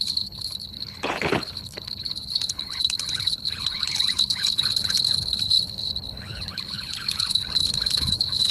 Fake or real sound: fake